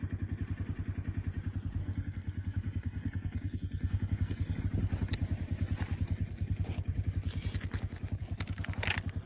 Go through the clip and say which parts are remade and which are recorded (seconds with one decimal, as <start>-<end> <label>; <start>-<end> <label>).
0.0-1.8 recorded; 1.8-4.6 remade; 4.6-9.3 recorded